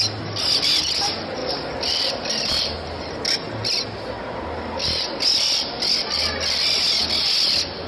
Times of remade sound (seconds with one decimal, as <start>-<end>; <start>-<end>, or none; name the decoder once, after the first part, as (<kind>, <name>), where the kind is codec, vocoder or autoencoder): none